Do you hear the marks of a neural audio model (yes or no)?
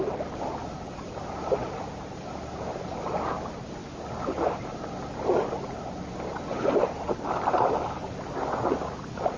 no